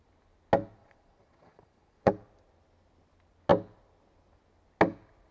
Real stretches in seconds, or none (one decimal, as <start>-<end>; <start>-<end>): 0.0-0.8; 2.1-5.3

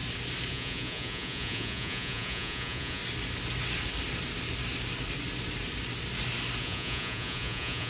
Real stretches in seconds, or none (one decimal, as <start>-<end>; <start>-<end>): 0.0-0.5; 3.0-6.6

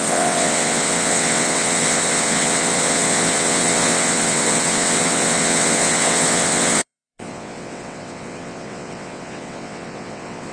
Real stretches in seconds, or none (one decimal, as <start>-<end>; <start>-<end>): none

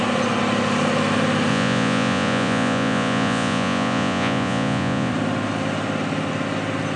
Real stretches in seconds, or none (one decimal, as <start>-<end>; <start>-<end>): 0.0-1.5; 5.1-7.0

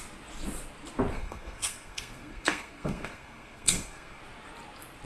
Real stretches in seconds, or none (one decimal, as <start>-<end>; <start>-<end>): 0.0-1.1; 4.2-5.1

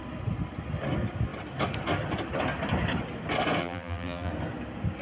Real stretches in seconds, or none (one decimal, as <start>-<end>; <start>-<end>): 0.0-3.6; 4.3-5.0

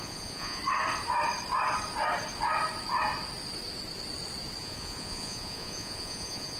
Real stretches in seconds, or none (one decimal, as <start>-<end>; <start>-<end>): 0.6-4.6